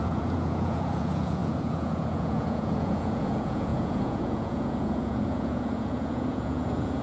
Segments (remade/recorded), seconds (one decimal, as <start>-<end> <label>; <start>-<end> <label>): 0.0-7.0 remade